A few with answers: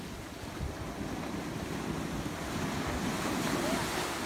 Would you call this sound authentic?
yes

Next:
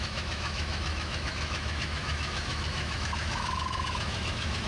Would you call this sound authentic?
no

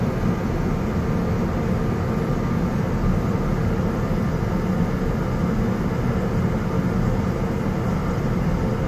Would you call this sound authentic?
yes